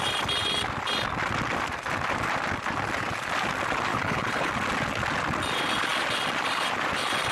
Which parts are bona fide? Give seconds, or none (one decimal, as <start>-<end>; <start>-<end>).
0.0-3.9; 4.5-7.3